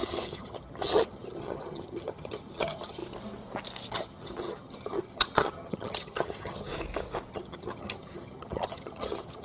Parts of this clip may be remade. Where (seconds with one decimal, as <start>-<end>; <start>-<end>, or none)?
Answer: 0.0-3.0; 3.9-6.7; 7.3-9.4

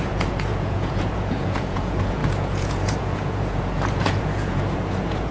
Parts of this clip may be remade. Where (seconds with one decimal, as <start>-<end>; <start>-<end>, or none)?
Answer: 0.0-5.3

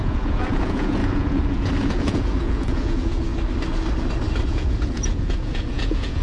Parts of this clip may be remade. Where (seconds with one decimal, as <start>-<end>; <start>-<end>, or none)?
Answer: 0.0-3.3; 4.5-6.2